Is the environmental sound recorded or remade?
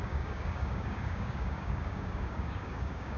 remade